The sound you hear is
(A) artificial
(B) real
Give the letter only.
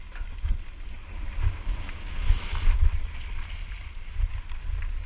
B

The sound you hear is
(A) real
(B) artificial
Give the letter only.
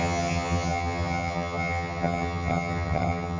B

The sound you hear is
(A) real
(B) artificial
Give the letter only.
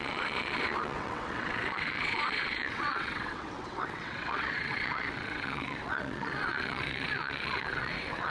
B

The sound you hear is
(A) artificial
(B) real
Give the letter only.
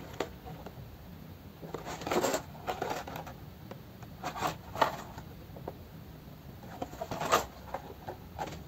B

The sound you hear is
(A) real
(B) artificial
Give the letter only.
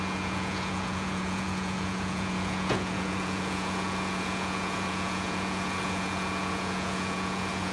B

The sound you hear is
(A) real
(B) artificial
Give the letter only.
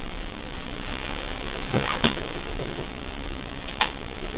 B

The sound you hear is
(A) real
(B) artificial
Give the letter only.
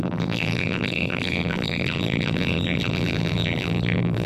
B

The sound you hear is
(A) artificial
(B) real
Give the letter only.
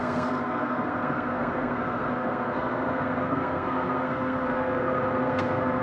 A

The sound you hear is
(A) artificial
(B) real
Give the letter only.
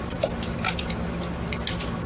B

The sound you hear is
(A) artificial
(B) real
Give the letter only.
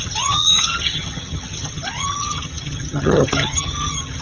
A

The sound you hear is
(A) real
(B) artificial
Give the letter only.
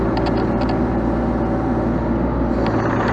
A